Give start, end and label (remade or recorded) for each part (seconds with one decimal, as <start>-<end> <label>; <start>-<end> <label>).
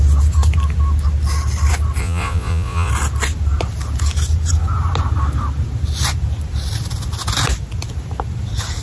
0.0-2.0 recorded; 2.0-2.9 remade; 2.9-8.8 recorded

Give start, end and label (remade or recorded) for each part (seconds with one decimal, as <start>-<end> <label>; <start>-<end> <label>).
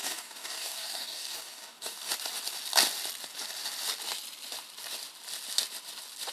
0.0-2.1 remade; 2.1-6.3 recorded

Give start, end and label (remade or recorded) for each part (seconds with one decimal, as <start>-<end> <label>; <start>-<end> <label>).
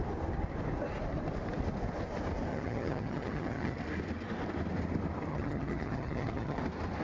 0.0-2.5 recorded; 2.5-3.8 remade; 3.8-5.3 recorded; 5.3-6.6 remade; 6.6-7.0 recorded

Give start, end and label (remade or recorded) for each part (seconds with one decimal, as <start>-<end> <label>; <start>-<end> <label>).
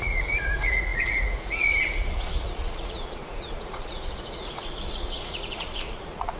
0.0-6.4 remade